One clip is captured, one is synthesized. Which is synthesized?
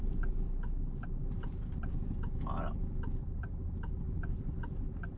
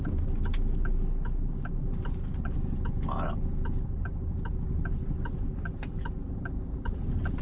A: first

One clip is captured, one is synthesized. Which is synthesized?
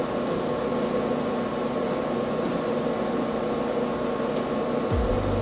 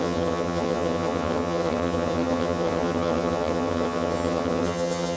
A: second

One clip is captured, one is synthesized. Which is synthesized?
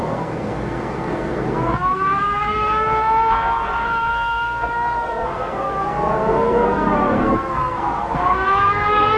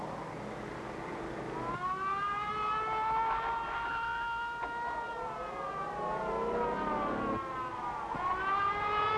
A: first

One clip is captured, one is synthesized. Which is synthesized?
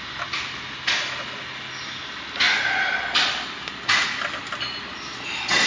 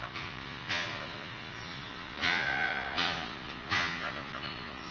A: second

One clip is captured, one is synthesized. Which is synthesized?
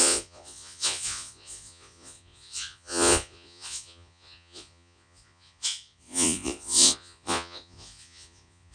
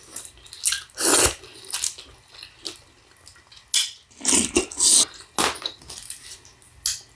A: first